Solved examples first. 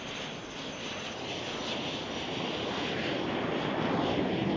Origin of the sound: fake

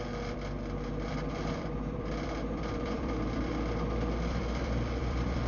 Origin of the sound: fake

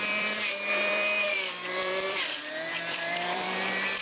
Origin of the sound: fake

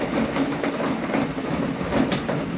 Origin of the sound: fake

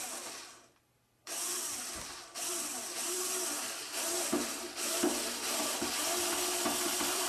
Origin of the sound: fake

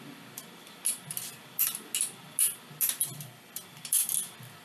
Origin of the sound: real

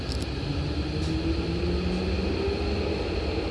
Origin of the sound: real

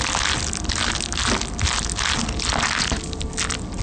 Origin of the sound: real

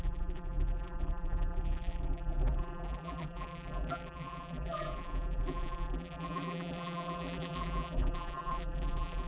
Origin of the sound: fake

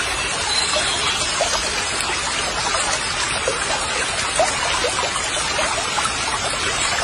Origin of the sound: real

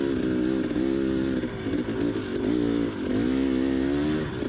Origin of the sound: real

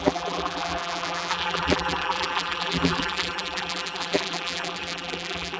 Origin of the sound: fake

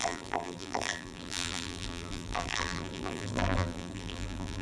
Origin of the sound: fake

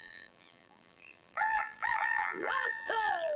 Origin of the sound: fake